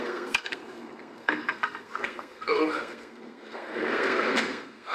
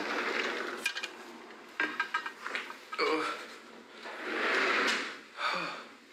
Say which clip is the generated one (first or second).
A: first